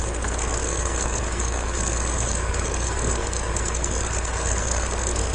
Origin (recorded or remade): remade